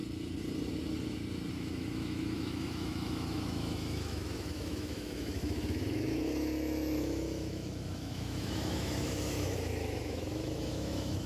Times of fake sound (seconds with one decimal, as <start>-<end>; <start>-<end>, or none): 1.5-11.3